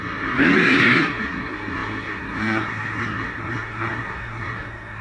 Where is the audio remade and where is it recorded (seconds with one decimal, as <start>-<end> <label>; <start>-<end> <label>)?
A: 0.0-5.0 remade